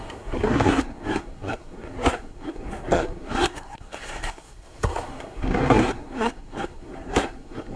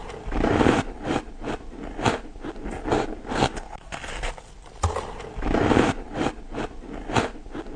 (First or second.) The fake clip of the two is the first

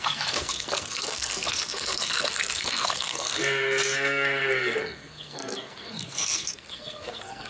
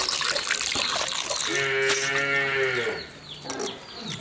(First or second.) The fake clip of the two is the first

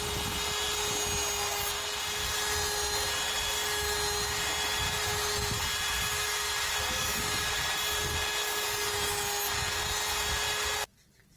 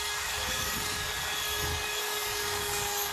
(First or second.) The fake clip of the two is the second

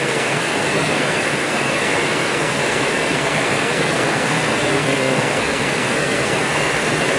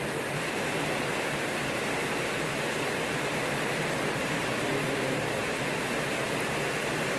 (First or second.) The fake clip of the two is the first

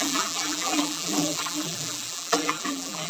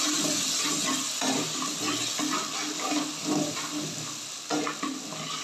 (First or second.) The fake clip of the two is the first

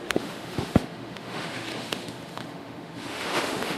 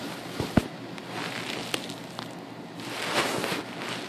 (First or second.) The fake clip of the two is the first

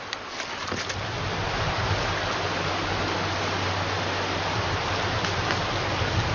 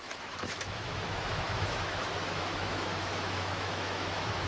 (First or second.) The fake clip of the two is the second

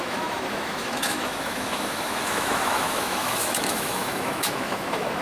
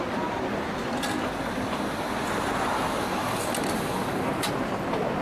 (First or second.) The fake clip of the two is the first